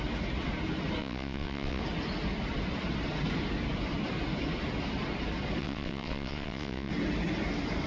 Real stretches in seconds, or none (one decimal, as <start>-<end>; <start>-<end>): 0.0-1.0; 1.8-5.6; 6.9-7.9